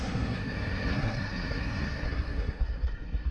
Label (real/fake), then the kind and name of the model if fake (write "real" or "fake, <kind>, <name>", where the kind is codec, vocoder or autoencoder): fake, codec, SNAC